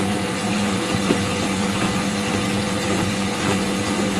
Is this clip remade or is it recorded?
remade